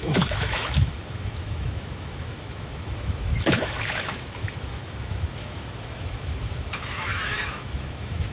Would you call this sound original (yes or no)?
no